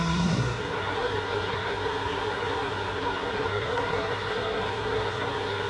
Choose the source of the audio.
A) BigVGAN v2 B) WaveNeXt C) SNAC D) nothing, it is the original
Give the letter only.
C